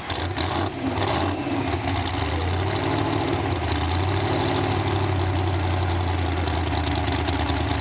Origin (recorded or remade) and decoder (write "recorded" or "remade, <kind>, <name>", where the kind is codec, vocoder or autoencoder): recorded